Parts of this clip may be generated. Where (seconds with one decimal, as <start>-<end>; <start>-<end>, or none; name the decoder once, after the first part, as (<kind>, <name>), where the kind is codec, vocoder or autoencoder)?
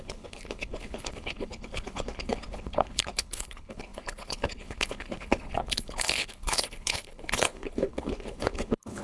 0.0-9.0 (codec, HILCodec)